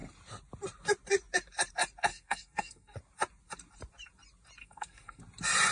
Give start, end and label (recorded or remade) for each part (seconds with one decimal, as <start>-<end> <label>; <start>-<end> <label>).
0.0-2.1 recorded; 2.1-3.0 remade; 3.0-4.6 recorded; 4.6-5.2 remade; 5.2-5.7 recorded